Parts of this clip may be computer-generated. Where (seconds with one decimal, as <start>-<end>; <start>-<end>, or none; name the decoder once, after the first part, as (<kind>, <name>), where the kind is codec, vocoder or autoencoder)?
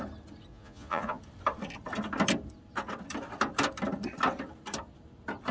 0.5-1.2 (vocoder, Vocos)